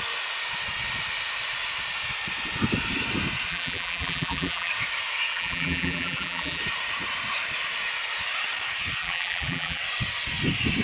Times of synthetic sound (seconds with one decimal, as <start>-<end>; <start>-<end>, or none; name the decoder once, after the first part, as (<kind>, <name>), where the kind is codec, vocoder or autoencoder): 3.5-4.7 (vocoder, BigVGAN v2); 5.3-6.6; 9.0-9.8